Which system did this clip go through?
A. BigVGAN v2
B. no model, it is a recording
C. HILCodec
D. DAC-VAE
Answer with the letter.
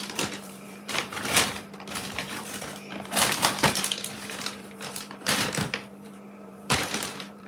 A